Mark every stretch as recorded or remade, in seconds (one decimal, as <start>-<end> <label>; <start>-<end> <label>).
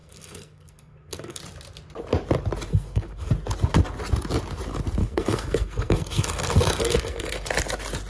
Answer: 0.0-1.4 remade; 1.4-2.7 recorded; 2.7-3.3 remade; 3.3-5.0 recorded; 5.0-7.5 remade; 7.5-8.1 recorded